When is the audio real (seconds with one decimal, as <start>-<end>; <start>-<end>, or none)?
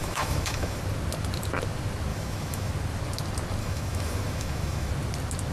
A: 0.8-2.1; 2.7-3.6; 4.9-5.5